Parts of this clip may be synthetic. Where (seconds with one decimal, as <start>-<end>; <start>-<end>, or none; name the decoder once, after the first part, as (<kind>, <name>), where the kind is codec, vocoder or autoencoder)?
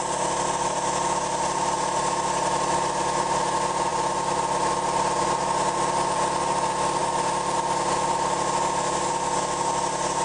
none